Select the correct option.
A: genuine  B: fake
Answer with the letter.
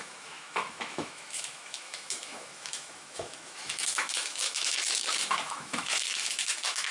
B